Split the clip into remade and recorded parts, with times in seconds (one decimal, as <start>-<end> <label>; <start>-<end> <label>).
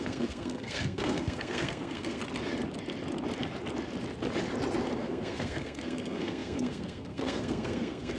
0.0-2.2 remade; 2.2-5.0 recorded; 5.0-8.2 remade